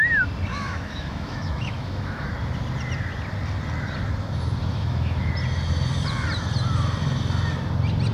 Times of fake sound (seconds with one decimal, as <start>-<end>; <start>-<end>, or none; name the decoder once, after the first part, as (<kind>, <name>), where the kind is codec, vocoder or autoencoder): 0.5-2.3 (autoencoder, DAC-VAE); 4.7-5.3